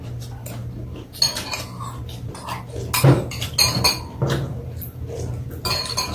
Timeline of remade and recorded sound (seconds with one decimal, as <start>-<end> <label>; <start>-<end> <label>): 0.0-6.1 recorded